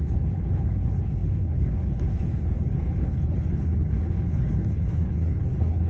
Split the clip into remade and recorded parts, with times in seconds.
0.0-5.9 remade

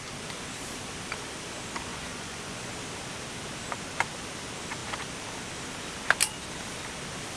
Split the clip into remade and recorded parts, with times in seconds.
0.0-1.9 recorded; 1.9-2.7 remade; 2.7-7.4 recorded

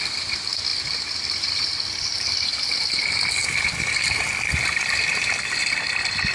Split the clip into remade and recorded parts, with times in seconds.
0.0-6.3 remade

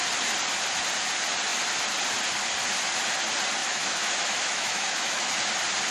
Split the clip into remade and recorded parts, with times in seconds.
0.0-3.6 recorded; 3.6-5.5 remade; 5.5-5.9 recorded

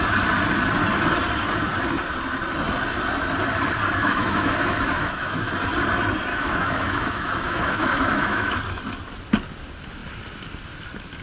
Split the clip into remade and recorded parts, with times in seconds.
0.0-4.0 recorded; 4.0-5.5 remade; 5.5-6.3 recorded; 6.3-8.6 remade; 8.6-11.2 recorded